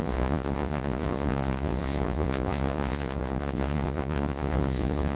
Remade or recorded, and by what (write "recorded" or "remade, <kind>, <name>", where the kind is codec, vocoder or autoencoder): remade, vocoder, Vocos